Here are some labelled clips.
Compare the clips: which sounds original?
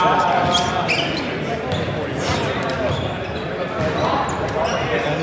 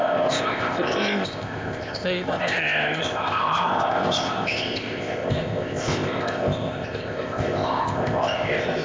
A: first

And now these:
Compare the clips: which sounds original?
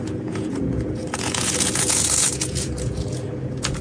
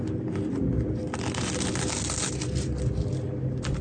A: second